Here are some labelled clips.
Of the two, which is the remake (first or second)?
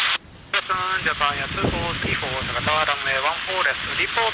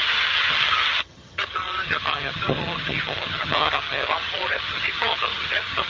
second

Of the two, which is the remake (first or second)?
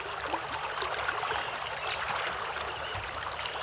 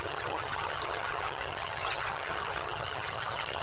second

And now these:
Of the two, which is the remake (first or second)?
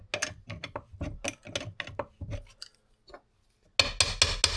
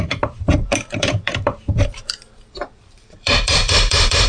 second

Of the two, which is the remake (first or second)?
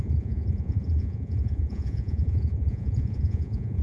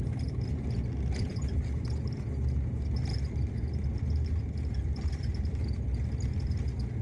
first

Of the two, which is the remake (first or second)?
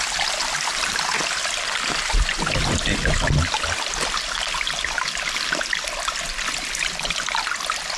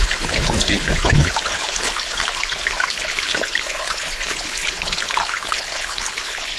second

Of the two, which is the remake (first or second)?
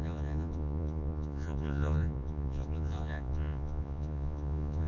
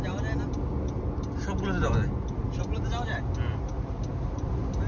first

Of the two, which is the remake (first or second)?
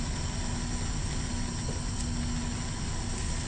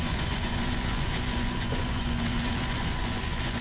second